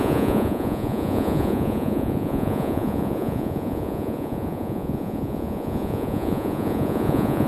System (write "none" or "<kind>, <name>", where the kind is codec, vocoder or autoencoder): vocoder, Vocos